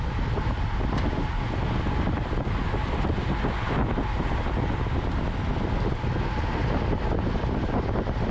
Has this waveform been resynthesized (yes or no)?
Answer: no